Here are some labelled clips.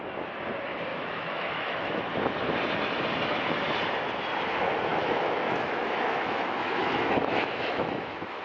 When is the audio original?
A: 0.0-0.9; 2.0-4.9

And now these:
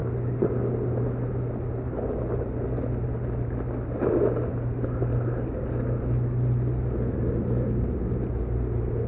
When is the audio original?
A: 0.0-9.1

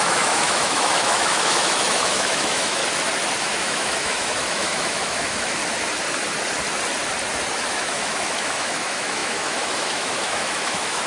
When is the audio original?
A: 2.8-3.4; 5.6-7.7